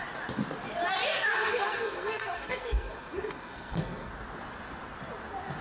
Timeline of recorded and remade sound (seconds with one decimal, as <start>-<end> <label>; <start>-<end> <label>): 0.0-1.1 recorded; 1.1-4.1 remade; 4.1-5.6 recorded